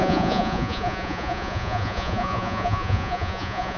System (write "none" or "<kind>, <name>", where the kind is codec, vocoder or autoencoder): vocoder, Vocos